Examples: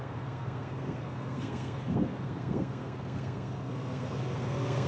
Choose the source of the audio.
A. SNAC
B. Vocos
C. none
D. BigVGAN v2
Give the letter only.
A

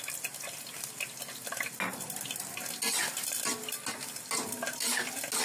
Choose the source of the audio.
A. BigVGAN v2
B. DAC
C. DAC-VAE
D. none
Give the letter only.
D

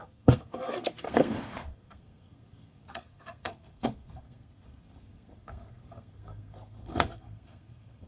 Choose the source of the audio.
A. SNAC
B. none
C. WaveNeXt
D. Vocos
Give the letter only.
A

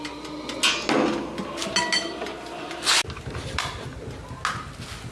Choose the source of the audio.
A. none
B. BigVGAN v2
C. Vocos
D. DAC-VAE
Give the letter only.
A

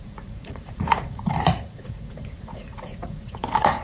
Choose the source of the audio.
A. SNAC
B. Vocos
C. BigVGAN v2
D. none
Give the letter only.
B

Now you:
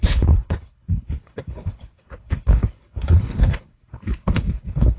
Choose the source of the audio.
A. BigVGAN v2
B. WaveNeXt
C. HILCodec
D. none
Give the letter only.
C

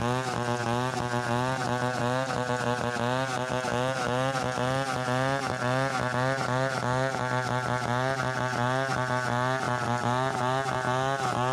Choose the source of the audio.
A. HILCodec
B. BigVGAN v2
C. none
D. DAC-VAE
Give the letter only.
C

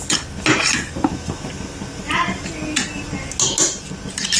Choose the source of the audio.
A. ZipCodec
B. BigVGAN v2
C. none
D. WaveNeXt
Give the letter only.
C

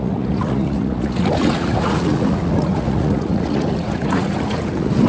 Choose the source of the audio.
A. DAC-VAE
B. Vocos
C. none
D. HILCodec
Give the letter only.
B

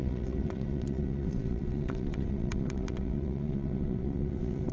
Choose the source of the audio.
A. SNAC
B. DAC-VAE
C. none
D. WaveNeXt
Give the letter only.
D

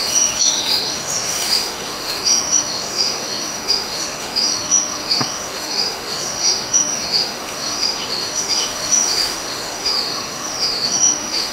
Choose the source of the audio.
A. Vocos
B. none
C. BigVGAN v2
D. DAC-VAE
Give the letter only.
D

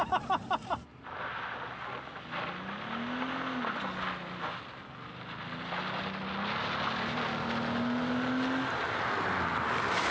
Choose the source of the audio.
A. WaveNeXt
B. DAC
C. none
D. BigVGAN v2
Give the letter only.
C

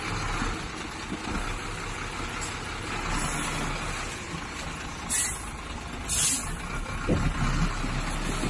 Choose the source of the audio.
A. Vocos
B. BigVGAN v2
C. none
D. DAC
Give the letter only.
C